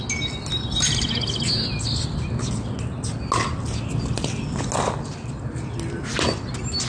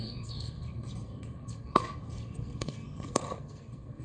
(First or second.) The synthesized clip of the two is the second